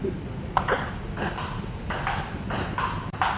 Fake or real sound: real